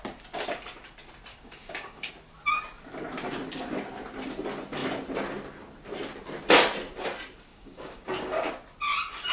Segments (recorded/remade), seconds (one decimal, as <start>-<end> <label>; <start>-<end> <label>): 0.0-1.3 recorded; 1.3-2.1 remade; 2.1-7.5 recorded; 7.5-8.5 remade; 8.5-9.3 recorded